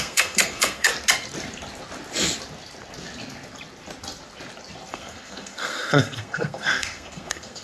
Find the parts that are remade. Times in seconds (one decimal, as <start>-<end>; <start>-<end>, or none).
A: 0.0-0.9; 4.9-7.6